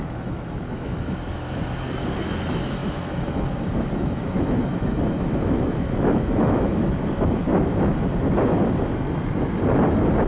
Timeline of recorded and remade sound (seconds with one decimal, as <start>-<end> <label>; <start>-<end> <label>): 0.0-7.5 remade; 7.5-10.3 recorded

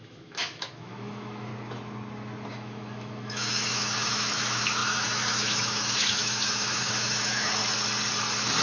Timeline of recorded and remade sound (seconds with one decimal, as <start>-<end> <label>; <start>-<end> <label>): 0.0-1.5 remade; 1.5-2.5 recorded; 2.5-7.6 remade; 7.6-8.6 recorded

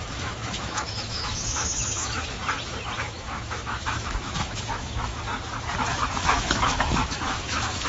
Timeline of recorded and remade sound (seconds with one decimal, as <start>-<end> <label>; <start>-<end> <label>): 0.0-2.4 remade; 2.4-3.0 recorded; 3.0-5.1 remade; 5.1-5.9 recorded; 5.9-7.9 remade

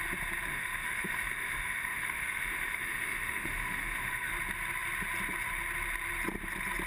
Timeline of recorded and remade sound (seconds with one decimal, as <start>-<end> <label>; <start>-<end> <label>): 0.0-0.5 recorded; 0.5-4.3 remade; 4.3-6.9 recorded

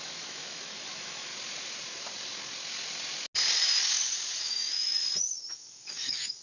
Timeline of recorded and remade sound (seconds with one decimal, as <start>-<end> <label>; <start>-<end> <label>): 0.0-1.3 remade; 1.3-4.4 recorded; 4.4-5.0 remade; 5.0-5.5 recorded; 5.5-6.4 remade

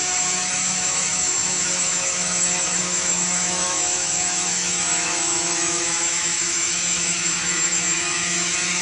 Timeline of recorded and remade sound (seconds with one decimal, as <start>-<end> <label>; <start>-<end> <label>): 0.0-8.8 remade